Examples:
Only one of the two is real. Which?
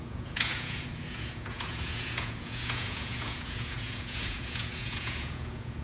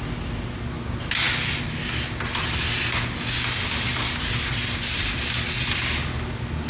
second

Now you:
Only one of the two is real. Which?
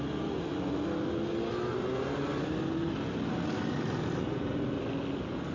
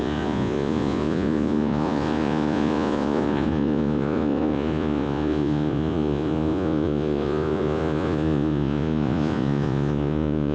first